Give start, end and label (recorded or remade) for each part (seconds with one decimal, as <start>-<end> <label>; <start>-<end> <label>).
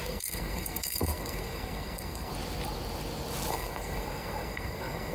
0.0-2.3 remade; 2.3-3.5 recorded; 3.5-5.1 remade